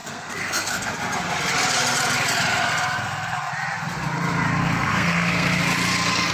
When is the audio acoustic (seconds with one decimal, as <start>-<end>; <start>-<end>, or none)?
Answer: 0.9-2.5; 3.5-4.6; 5.6-6.3